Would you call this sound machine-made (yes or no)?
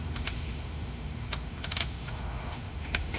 yes